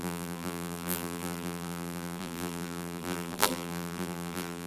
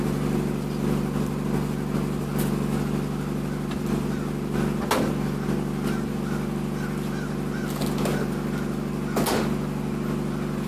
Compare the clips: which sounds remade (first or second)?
first